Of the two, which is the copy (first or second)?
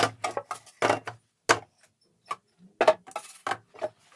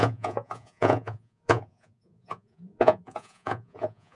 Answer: second